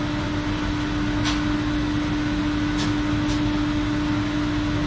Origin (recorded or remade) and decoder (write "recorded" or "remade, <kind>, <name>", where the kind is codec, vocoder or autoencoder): recorded